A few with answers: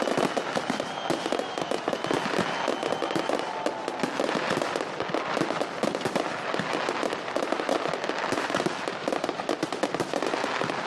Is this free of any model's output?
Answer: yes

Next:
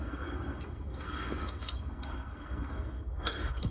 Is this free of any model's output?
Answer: no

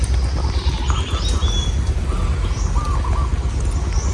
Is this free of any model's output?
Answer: yes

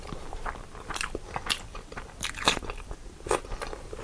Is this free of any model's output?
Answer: no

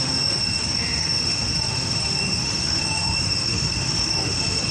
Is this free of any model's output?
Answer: no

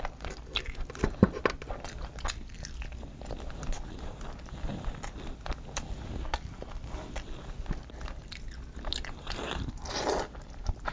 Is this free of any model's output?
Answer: yes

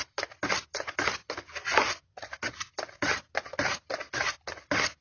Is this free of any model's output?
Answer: yes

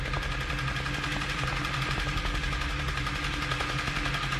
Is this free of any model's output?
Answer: yes